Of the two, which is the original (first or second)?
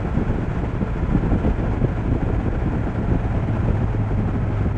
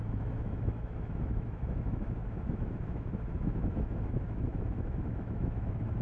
first